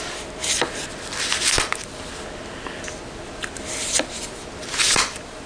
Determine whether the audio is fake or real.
real